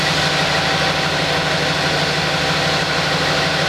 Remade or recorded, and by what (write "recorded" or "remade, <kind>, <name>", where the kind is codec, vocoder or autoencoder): recorded